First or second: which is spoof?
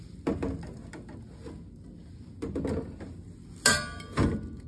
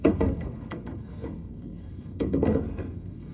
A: second